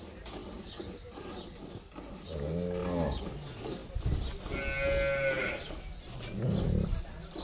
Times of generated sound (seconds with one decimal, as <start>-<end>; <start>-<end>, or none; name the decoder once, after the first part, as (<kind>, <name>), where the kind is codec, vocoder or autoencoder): none

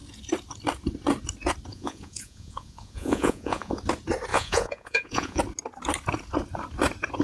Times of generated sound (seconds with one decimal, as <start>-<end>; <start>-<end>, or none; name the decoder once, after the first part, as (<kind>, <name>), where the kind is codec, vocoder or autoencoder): 1.7-3.8 (vocoder, Vocos); 4.3-5.4

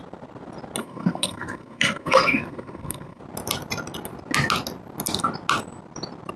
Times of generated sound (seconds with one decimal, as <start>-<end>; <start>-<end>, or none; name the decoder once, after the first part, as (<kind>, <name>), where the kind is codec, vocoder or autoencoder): 0.8-3.2 (codec, SNAC)

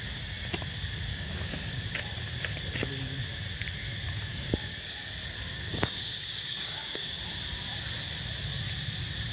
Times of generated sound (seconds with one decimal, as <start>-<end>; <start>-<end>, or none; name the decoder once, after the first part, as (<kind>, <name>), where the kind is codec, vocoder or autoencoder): 1.1-1.9 (codec, DAC); 4.3-5.1; 5.5-7.2

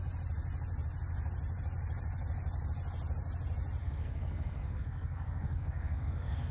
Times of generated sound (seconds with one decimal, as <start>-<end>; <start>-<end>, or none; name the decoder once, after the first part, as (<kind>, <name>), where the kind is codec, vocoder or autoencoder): 3.8-6.5 (codec, SNAC)